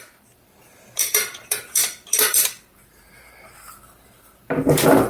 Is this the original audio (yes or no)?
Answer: no